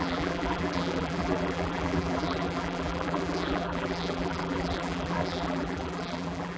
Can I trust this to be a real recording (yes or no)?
no